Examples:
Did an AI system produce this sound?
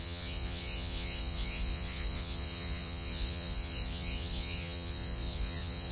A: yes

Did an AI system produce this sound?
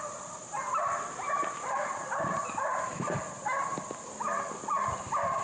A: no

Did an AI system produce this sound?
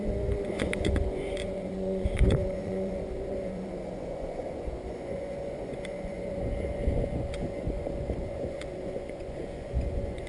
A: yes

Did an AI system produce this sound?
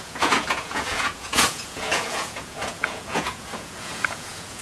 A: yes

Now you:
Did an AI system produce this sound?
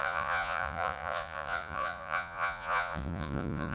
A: yes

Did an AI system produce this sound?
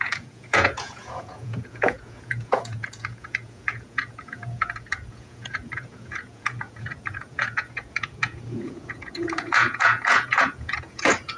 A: yes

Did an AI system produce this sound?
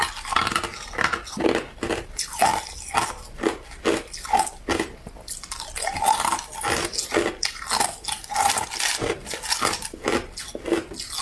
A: no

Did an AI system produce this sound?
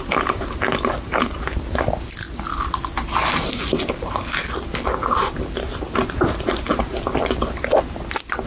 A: no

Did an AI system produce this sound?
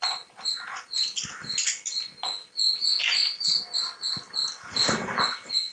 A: no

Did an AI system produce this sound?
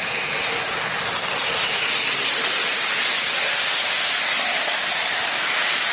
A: no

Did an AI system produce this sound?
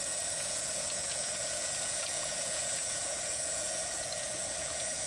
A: yes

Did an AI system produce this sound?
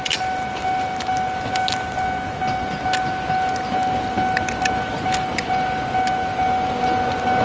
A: no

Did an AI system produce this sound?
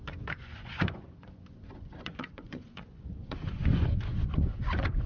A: yes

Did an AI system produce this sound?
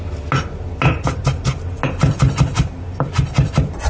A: no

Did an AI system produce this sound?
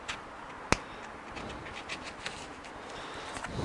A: no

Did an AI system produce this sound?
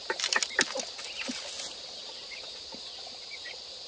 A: no